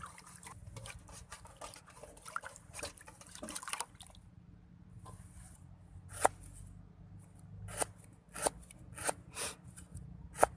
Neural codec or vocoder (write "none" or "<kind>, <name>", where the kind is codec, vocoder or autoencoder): none